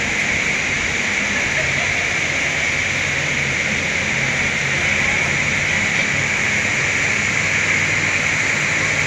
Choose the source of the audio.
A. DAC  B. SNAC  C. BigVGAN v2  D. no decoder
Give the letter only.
D